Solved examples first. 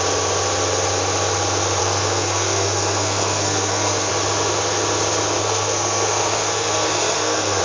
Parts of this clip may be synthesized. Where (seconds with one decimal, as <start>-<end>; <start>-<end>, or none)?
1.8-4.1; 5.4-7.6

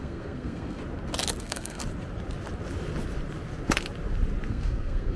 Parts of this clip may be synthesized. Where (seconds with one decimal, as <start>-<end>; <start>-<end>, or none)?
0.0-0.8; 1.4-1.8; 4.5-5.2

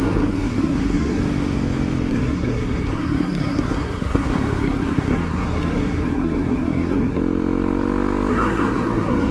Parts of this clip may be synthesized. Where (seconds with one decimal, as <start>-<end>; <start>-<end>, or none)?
0.0-1.2; 2.1-7.2; 8.3-9.3

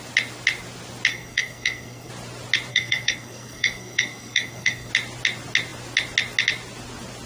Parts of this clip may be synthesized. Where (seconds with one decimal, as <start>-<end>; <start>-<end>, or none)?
1.1-2.1; 2.7-4.9